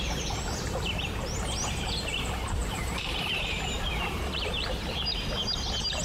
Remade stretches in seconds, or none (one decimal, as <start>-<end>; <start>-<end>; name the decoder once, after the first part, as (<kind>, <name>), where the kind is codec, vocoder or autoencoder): 2.6-5.0 (vocoder, BigVGAN v2)